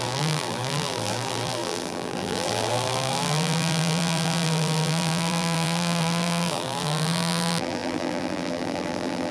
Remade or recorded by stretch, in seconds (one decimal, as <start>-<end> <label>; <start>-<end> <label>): 0.0-9.3 remade